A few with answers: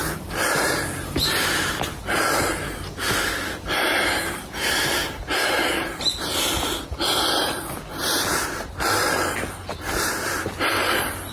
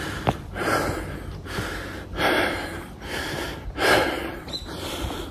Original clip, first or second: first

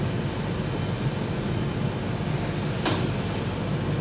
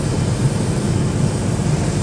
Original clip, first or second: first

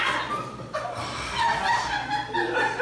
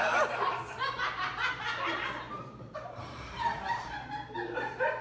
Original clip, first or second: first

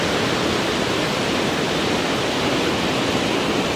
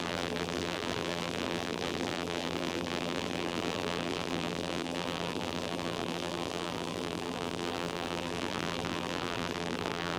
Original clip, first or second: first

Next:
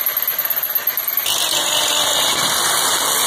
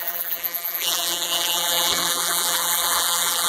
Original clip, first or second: first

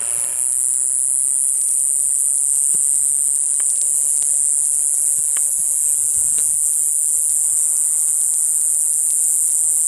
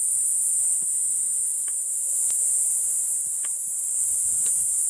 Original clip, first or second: first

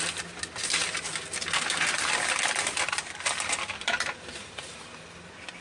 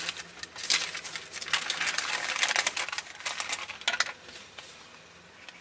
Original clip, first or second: second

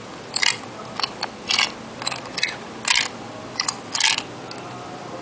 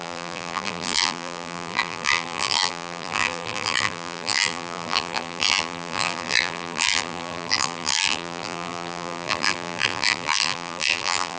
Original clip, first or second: first